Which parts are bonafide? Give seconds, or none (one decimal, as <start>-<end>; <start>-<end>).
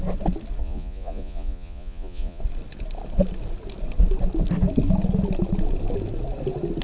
0.0-0.6; 2.4-6.8